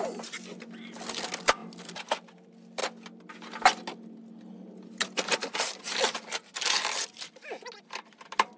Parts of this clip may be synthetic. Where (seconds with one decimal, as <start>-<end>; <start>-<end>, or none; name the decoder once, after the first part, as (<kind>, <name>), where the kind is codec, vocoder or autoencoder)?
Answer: none